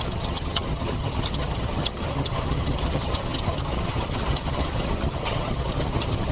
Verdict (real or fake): fake